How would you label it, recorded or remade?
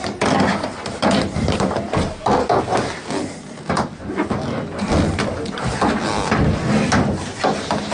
recorded